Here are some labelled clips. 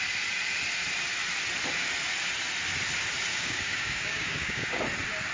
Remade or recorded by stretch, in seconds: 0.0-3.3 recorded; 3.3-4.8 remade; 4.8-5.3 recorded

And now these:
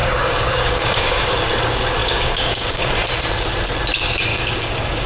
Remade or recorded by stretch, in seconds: 0.0-1.4 remade; 1.4-2.0 recorded; 2.0-2.9 remade; 2.9-4.3 recorded; 4.3-5.1 remade

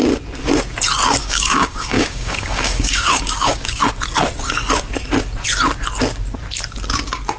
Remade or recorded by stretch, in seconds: 0.0-1.2 recorded; 1.2-3.8 remade; 3.8-7.4 recorded